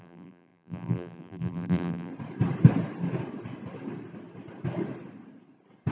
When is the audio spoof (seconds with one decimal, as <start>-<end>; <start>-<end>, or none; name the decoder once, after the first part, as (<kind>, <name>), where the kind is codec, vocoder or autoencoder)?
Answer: 0.0-2.1 (vocoder, BigVGAN v2)